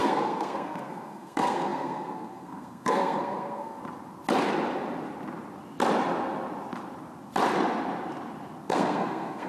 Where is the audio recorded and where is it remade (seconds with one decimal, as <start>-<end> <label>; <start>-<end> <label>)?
0.0-3.8 remade; 3.8-8.7 recorded; 8.7-9.5 remade